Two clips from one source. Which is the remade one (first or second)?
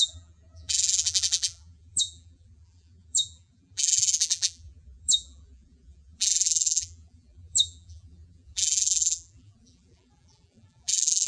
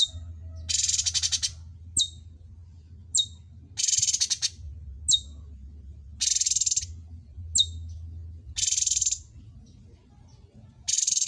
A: first